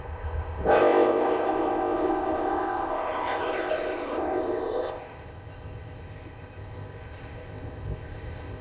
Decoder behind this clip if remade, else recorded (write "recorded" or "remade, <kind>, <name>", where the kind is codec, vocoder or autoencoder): remade, codec, ZipCodec